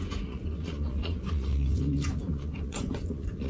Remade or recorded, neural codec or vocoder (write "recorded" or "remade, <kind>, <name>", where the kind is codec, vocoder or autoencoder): remade, vocoder, Vocos